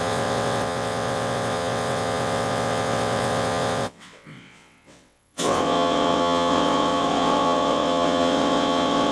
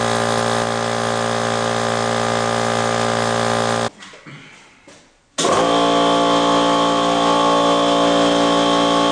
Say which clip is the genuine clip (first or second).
second